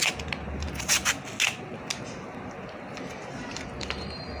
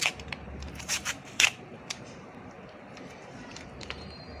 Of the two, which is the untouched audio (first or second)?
first